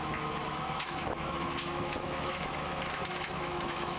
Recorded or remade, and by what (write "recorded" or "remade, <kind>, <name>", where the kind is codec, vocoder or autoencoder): remade, autoencoder, DAC-VAE